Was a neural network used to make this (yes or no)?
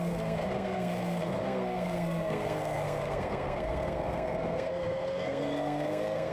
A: yes